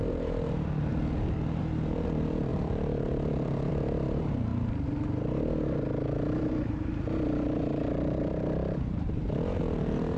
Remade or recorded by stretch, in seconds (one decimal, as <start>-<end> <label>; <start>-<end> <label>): 0.0-0.9 remade; 0.9-1.6 recorded; 1.6-4.5 remade; 4.5-6.4 recorded; 6.4-10.2 remade